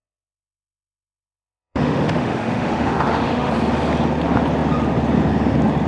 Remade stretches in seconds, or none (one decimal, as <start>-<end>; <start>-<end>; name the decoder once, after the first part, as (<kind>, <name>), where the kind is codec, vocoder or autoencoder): 0.0-3.5 (autoencoder, DAC-VAE)

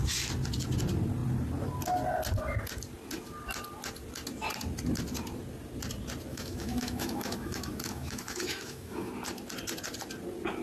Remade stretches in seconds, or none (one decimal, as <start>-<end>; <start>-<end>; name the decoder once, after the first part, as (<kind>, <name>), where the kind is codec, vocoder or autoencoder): 6.3-9.1 (autoencoder, DAC-VAE)

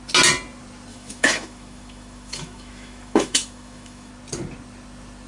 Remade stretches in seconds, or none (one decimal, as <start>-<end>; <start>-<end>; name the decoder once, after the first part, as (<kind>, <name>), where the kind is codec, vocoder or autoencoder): 0.9-4.1 (autoencoder, DAC-VAE)